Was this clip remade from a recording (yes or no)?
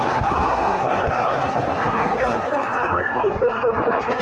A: yes